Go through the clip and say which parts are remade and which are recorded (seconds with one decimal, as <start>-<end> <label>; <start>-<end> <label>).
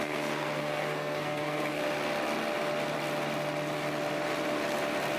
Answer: 0.0-1.8 remade; 1.8-5.2 recorded